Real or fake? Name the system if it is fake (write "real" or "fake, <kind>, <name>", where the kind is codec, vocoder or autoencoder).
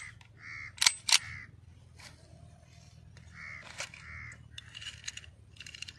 real